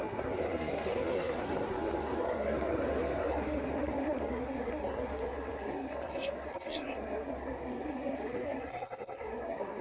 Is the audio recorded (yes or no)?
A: no